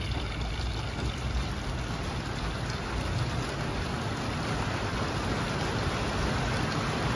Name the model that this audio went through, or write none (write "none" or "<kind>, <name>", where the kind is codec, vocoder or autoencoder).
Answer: none